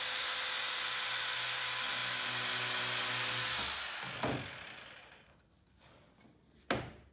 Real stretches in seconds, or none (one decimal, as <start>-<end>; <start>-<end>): 0.0-7.1

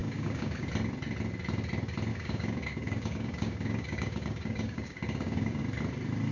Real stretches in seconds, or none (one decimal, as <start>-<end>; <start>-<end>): 0.7-2.1; 5.6-6.3

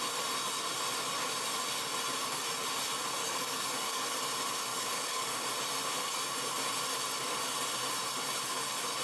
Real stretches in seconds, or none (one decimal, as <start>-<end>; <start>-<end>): 0.0-3.2; 4.2-4.7; 5.5-9.0

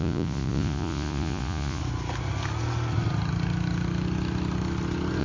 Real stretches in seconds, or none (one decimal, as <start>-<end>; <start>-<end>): 1.8-5.2

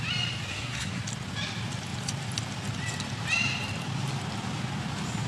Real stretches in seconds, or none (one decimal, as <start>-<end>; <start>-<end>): 0.0-0.5; 1.0-5.3

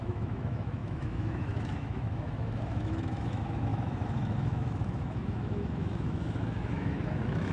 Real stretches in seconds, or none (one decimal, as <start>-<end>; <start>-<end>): none